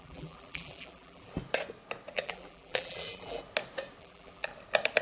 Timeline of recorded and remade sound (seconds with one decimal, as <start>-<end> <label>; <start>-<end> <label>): 0.0-1.3 remade; 1.3-2.1 recorded; 2.1-3.4 remade; 3.4-4.0 recorded; 4.0-4.5 remade; 4.5-5.0 recorded